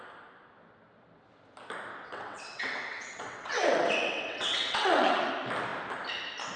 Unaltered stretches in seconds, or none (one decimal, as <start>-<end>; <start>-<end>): 0.0-1.9; 5.3-6.6

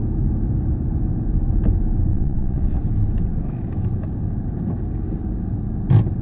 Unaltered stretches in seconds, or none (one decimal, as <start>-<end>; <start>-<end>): 0.0-2.1; 2.8-6.2